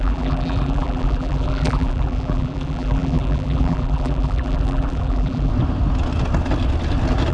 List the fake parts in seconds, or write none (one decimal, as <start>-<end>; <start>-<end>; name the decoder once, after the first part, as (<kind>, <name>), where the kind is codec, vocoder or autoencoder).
0.0-5.5 (vocoder, BigVGAN v2)